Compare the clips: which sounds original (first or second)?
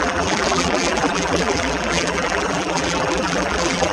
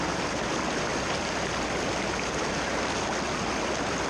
second